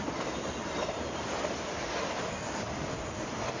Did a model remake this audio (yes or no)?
no